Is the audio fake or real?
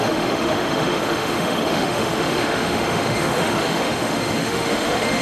fake